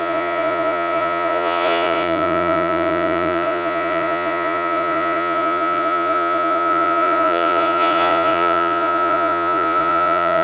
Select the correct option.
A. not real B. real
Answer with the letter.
A